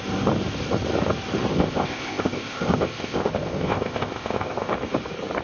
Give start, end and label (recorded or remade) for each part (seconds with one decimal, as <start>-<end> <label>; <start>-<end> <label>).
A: 0.0-1.5 recorded; 1.5-4.7 remade; 4.7-5.4 recorded

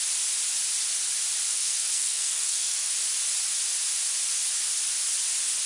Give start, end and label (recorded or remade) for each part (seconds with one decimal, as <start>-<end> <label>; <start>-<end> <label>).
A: 0.0-1.5 recorded; 1.5-2.9 remade; 2.9-5.7 recorded

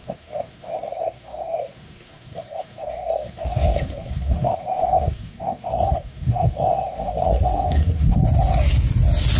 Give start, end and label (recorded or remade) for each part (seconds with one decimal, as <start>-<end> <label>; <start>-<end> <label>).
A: 0.0-8.2 remade; 8.2-9.4 recorded

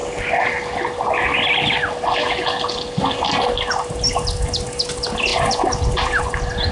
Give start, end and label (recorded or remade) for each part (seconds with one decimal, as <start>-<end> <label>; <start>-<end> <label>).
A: 0.0-5.3 recorded; 5.3-6.2 remade; 6.2-6.7 recorded